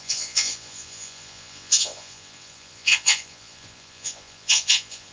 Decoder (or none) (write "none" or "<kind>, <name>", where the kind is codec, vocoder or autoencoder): vocoder, Vocos